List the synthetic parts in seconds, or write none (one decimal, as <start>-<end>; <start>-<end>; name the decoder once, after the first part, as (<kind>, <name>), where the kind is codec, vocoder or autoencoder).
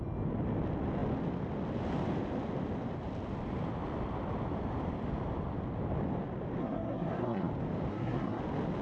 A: 6.6-7.5 (codec, SNAC); 7.9-8.4